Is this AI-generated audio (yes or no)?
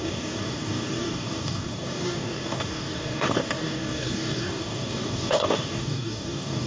yes